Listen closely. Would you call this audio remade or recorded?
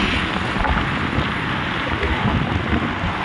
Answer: recorded